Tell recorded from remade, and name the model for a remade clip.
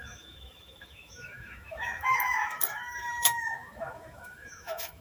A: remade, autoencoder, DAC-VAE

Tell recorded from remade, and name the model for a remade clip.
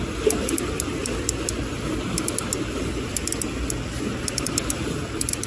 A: recorded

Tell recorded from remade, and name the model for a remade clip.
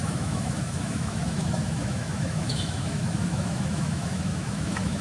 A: remade, autoencoder, DAC-VAE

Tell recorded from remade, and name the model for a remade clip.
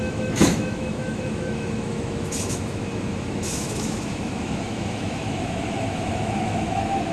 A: remade, autoencoder, DAC-VAE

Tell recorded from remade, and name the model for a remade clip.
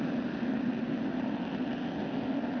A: recorded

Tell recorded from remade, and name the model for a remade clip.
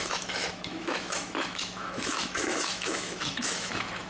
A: remade, autoencoder, DAC-VAE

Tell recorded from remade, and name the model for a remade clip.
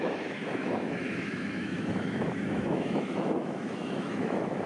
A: remade, autoencoder, DAC-VAE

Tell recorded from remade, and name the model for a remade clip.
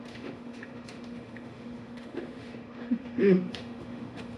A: remade, autoencoder, DAC-VAE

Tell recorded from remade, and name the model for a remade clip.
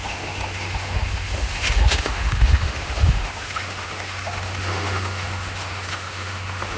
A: remade, autoencoder, DAC-VAE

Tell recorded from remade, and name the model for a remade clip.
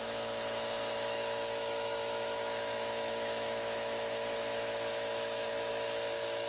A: remade, autoencoder, DAC-VAE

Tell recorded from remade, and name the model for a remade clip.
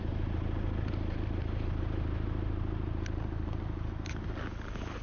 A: recorded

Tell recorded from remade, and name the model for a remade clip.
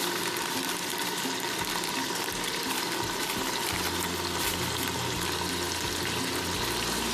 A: recorded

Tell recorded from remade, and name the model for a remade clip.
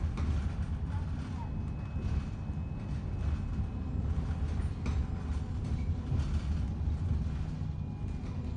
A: recorded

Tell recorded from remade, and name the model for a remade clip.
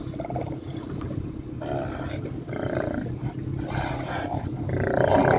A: recorded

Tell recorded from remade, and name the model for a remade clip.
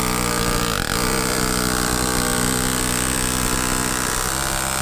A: recorded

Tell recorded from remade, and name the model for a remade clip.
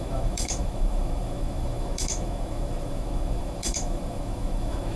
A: remade, autoencoder, DAC-VAE